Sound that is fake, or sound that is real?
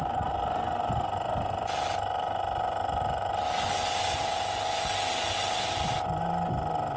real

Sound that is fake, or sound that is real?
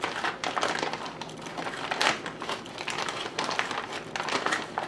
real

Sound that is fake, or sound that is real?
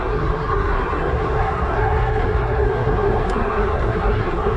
fake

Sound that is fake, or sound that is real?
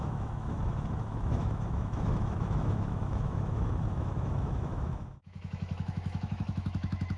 fake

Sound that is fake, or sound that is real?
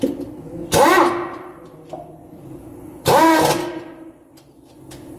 real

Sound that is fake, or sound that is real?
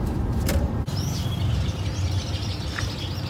fake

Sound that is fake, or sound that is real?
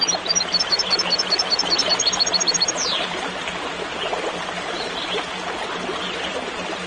fake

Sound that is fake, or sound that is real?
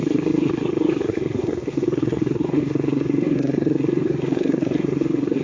fake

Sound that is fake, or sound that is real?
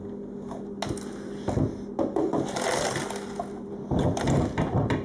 real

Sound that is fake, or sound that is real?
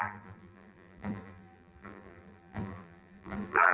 fake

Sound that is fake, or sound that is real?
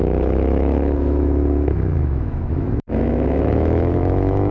fake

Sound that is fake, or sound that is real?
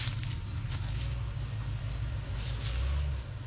real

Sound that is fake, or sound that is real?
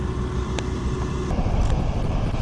real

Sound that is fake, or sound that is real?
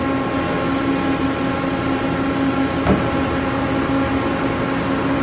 real